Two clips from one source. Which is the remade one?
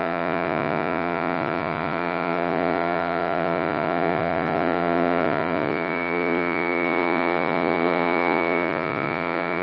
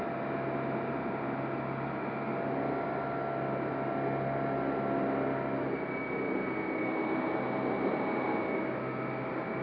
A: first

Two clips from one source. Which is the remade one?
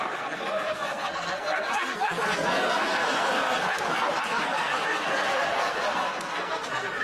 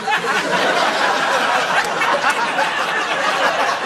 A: first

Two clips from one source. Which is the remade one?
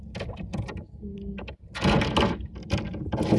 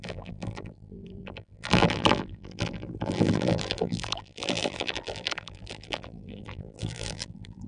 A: second